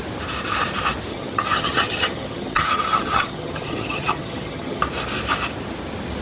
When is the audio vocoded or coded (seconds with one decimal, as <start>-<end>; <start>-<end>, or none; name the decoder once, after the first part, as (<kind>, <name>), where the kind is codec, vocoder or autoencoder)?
1.1-4.8 (vocoder, HiFi-GAN)

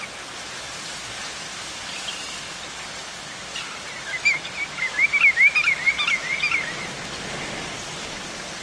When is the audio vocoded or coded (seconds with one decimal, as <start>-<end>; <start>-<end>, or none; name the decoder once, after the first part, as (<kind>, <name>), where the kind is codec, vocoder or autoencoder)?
none

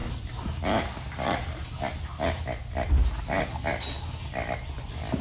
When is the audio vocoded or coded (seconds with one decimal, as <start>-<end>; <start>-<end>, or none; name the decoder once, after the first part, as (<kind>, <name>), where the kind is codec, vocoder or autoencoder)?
none

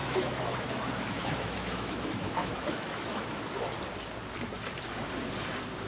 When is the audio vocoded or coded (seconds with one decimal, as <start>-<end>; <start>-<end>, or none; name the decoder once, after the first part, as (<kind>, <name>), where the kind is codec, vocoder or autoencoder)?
0.0-3.4 (autoencoder, DAC-VAE)